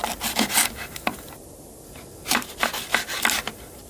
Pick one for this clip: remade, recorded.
recorded